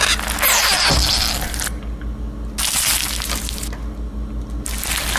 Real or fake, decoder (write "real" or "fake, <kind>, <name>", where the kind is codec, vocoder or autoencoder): real